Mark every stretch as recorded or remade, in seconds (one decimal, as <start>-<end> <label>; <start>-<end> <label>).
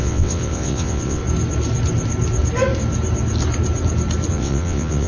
0.0-1.2 remade; 1.2-4.3 recorded; 4.3-5.1 remade